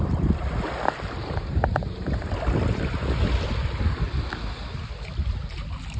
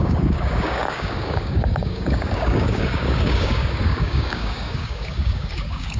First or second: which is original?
first